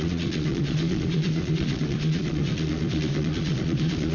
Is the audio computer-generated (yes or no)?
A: yes